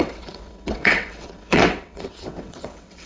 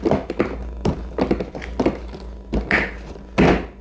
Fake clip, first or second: first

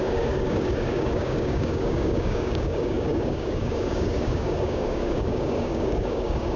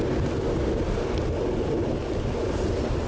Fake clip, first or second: first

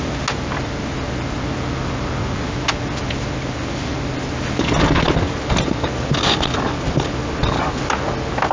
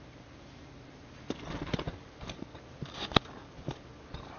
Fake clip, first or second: second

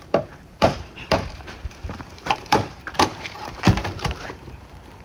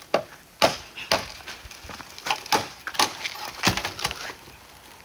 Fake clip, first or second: first